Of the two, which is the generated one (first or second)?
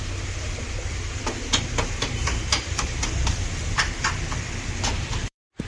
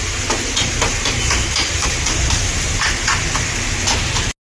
first